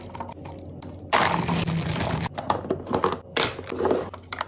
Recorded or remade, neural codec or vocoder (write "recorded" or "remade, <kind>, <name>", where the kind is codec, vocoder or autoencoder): recorded